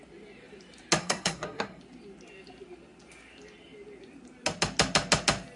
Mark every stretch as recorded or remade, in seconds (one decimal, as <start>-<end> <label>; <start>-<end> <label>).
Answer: 0.0-1.0 recorded; 1.0-1.8 remade; 1.8-5.6 recorded